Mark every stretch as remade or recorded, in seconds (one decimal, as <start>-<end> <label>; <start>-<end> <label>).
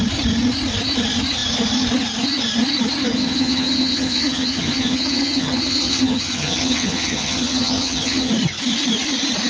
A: 0.0-3.1 recorded; 3.1-8.3 remade; 8.3-9.5 recorded